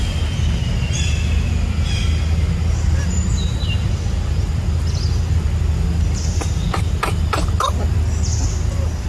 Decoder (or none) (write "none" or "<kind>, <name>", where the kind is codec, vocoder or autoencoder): none